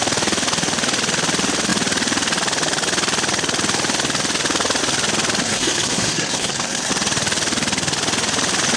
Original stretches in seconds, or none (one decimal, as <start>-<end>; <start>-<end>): 0.0-5.4; 6.9-8.8